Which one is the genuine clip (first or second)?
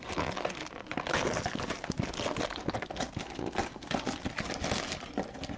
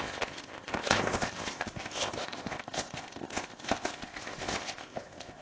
first